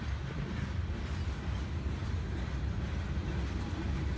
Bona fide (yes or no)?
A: yes